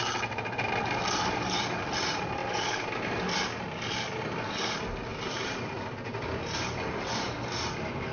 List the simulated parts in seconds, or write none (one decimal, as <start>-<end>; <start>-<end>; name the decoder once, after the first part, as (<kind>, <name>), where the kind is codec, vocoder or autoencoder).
none